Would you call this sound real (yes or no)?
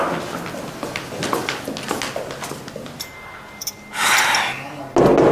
yes